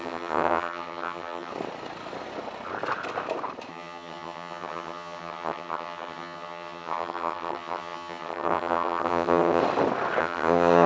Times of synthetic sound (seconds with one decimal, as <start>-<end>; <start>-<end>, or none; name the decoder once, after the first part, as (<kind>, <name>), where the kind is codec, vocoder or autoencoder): 0.0-1.5 (vocoder, HiFi-GAN); 3.7-9.6; 10.2-10.9